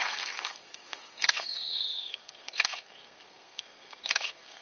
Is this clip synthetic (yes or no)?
yes